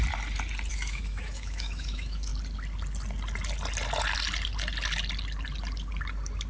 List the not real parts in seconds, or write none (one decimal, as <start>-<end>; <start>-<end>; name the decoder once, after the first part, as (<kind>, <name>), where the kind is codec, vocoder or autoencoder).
0.7-2.3 (autoencoder, DAC-VAE)